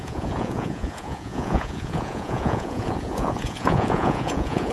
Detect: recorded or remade remade